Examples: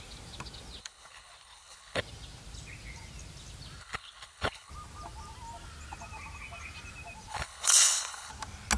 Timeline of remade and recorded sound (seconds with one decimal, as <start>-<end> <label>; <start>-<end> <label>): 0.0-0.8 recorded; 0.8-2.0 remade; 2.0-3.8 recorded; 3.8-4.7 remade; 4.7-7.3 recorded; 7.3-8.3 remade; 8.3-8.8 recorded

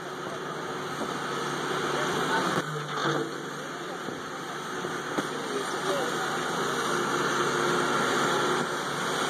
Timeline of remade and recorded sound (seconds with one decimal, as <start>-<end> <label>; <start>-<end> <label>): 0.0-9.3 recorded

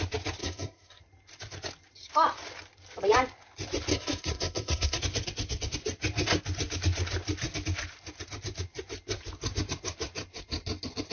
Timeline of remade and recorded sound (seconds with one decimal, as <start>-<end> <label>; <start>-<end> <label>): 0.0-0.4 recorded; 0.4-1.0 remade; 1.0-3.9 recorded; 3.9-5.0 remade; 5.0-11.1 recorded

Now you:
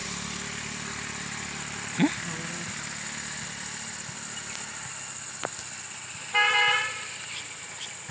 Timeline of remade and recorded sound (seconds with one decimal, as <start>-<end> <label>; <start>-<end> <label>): 0.0-2.7 remade; 2.7-8.1 recorded

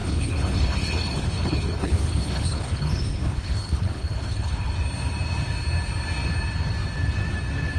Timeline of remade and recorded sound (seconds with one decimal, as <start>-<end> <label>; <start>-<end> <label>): 0.0-4.7 remade; 4.7-7.8 recorded

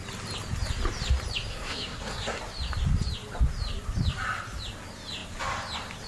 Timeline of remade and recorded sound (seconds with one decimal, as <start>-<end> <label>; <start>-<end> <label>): 0.0-1.5 recorded; 1.5-2.4 remade; 2.4-6.1 recorded